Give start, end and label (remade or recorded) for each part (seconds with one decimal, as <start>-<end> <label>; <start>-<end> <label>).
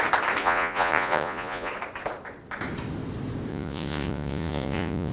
0.0-0.4 recorded; 0.4-1.7 remade; 1.7-3.5 recorded; 3.5-5.1 remade